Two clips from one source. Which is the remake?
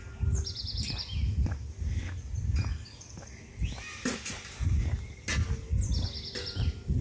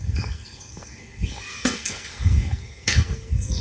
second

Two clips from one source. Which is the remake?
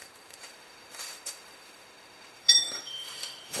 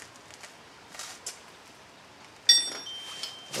first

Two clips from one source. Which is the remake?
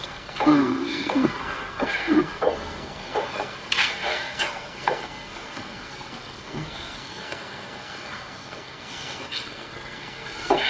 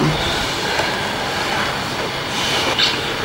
first